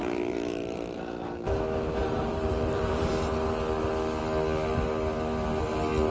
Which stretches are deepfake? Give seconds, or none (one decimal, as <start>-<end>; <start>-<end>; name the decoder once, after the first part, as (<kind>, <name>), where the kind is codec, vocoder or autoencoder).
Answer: 0.0-1.0 (vocoder, BigVGAN v2); 2.0-3.1